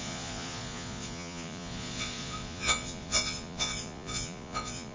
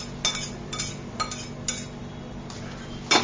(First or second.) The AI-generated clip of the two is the first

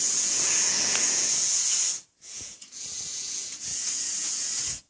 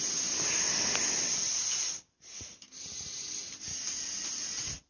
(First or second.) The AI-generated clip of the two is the first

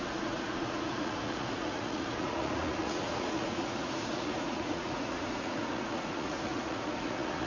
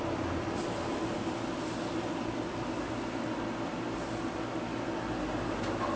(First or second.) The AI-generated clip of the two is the first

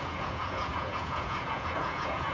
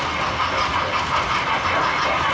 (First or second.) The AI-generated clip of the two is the first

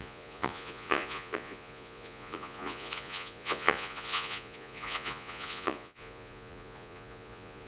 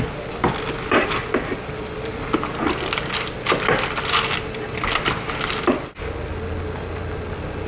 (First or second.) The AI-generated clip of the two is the first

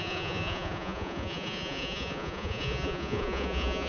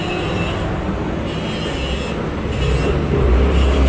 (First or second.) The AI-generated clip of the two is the first